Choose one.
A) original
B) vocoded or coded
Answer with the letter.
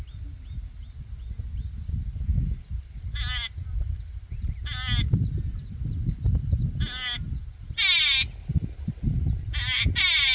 A